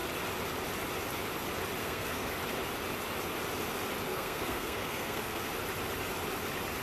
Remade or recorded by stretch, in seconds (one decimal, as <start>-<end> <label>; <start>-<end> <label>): 0.0-1.8 recorded; 1.8-2.3 remade; 2.3-4.1 recorded; 4.1-5.5 remade; 5.5-6.8 recorded